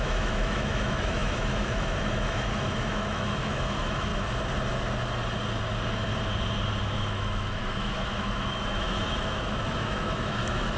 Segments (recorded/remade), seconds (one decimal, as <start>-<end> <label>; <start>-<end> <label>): 0.0-4.1 remade; 4.1-6.8 recorded; 6.8-10.8 remade